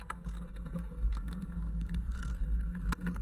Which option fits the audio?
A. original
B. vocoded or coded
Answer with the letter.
B